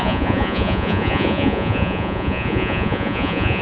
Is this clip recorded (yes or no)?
no